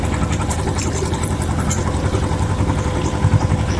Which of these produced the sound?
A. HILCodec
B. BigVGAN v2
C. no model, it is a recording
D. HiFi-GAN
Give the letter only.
B